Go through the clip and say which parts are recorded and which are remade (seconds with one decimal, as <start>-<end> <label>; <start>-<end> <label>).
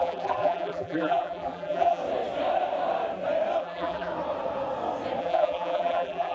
0.0-2.0 remade; 2.0-3.6 recorded; 3.6-4.1 remade; 4.1-5.2 recorded; 5.2-6.3 remade